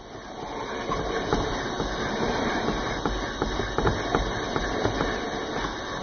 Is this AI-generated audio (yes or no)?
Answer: no